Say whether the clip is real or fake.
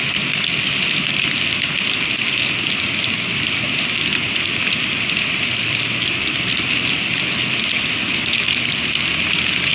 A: real